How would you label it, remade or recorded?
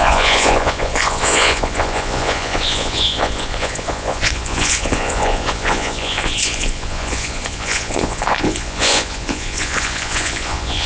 remade